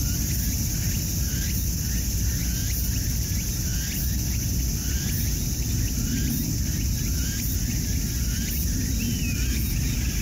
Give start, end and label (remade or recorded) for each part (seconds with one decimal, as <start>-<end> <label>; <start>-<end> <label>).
0.0-10.2 recorded